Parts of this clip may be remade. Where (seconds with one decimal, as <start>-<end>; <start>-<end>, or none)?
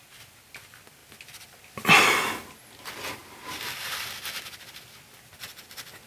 none